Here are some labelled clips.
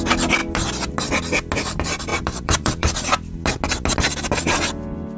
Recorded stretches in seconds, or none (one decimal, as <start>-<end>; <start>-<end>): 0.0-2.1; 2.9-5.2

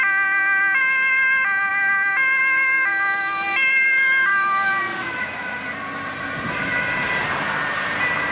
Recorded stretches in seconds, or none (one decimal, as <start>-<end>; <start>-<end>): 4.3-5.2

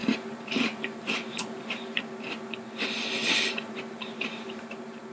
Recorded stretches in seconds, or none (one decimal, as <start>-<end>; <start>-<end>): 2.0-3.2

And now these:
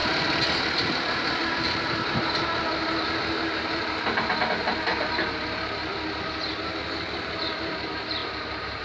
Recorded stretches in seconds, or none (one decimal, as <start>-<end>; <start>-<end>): 0.0-0.8; 5.9-6.5

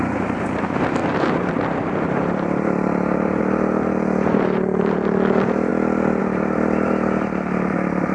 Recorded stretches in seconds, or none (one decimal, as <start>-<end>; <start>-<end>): 5.7-6.2

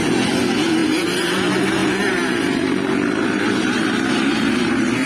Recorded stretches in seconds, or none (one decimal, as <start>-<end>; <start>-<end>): 0.0-0.8; 1.3-1.8